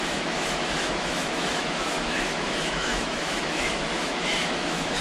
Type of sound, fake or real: fake